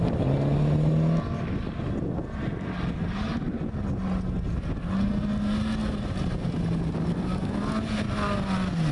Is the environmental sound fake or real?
real